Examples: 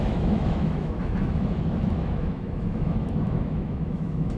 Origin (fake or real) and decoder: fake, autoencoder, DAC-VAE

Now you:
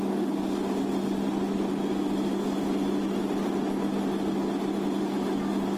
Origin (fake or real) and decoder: real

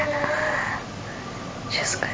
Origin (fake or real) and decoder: real